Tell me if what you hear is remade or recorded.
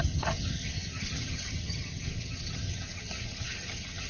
remade